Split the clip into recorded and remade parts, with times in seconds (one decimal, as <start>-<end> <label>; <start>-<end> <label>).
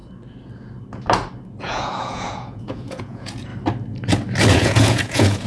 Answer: 0.0-1.6 recorded; 1.6-3.5 remade; 3.5-4.5 recorded; 4.5-5.5 remade